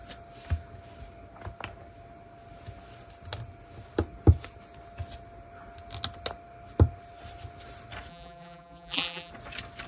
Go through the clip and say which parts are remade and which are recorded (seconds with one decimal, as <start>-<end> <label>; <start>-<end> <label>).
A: 0.0-8.1 recorded; 8.1-9.3 remade; 9.3-9.9 recorded

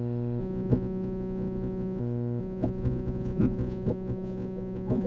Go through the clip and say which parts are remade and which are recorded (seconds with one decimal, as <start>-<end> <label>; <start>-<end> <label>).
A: 0.0-0.4 recorded; 0.4-2.0 remade; 2.0-2.4 recorded; 2.4-5.1 remade

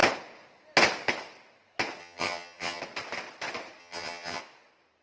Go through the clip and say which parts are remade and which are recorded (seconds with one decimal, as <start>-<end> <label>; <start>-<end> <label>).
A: 0.0-2.0 recorded; 2.0-2.8 remade; 2.8-3.8 recorded; 3.8-4.4 remade; 4.4-5.0 recorded

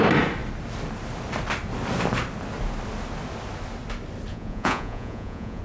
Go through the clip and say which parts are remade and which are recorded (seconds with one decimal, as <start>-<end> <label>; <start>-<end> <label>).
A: 0.0-4.3 recorded; 4.3-5.6 remade

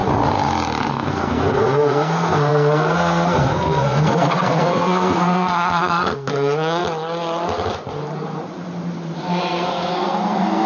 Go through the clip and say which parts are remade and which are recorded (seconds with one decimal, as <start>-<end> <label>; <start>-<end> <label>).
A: 0.0-0.9 recorded; 0.9-6.8 remade; 6.8-9.2 recorded; 9.2-10.7 remade

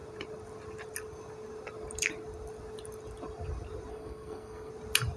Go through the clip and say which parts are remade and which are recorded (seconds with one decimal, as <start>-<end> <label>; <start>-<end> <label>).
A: 0.0-3.9 recorded; 3.9-4.7 remade; 4.7-5.2 recorded

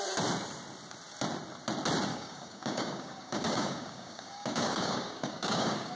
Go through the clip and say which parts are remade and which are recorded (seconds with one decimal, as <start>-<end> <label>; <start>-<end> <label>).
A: 0.0-2.1 recorded; 2.1-6.0 remade